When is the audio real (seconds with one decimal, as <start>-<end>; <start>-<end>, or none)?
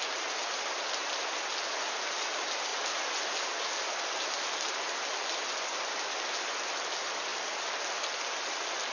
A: 0.0-8.9